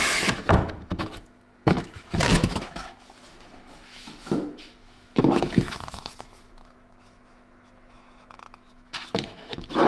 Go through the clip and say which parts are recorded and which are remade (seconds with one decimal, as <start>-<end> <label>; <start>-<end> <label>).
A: 0.0-9.9 remade